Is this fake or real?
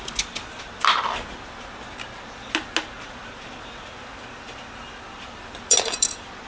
real